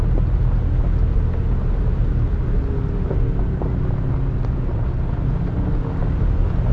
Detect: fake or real real